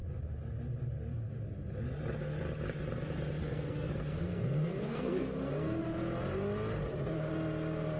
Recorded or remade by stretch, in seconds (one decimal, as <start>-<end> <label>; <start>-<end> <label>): 0.0-3.4 recorded; 3.4-5.8 remade; 5.8-8.0 recorded